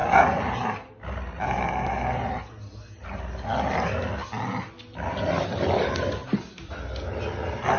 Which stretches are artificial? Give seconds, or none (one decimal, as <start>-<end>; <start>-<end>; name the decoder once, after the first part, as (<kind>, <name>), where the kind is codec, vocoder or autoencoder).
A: none